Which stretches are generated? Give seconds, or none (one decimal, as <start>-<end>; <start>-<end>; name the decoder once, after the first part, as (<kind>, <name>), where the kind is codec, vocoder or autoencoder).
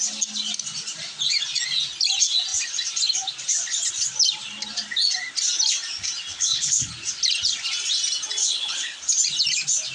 6.3-6.9 (codec, HILCodec); 8.4-9.0